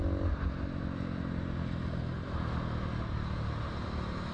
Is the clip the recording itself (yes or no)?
yes